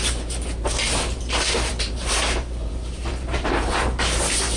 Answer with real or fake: fake